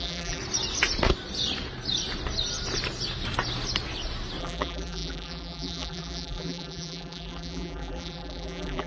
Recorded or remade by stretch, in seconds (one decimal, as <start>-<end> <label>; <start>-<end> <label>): 0.0-0.4 remade; 0.4-4.4 recorded; 4.4-8.9 remade